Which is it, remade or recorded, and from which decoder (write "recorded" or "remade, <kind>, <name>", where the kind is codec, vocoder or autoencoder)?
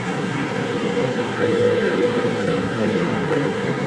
remade, codec, SNAC